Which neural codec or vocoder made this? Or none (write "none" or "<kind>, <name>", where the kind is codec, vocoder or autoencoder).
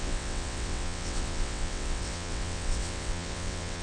vocoder, WaveNeXt